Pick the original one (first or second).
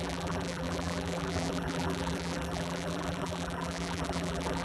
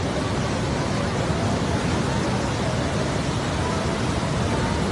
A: second